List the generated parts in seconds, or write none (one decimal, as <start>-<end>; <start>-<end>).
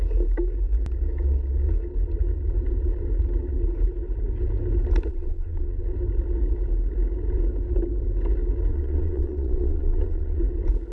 5.1-5.8; 8.7-10.4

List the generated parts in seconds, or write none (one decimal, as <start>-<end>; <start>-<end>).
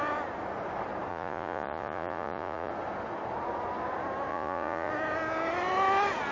1.1-2.7; 4.3-4.9